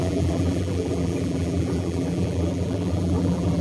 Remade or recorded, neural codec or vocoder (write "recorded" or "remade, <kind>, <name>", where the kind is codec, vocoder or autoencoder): remade, vocoder, BigVGAN v2